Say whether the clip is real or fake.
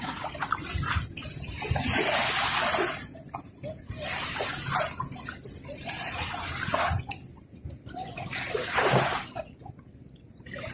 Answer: real